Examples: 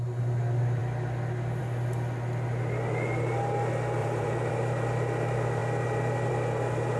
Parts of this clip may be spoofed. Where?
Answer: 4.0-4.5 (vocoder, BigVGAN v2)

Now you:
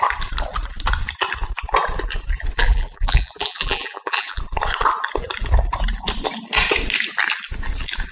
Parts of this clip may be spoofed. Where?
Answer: 2.6-4.4 (vocoder, BigVGAN v2)

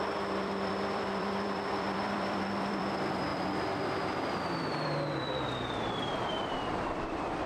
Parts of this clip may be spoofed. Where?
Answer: 0.0-7.5 (vocoder, BigVGAN v2)